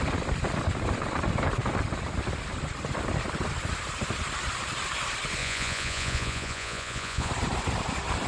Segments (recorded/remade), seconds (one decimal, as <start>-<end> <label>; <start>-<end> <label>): 0.0-5.4 recorded; 5.4-7.3 remade; 7.3-8.3 recorded